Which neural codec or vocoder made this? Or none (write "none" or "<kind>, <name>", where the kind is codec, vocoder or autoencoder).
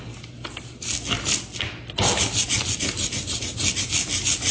none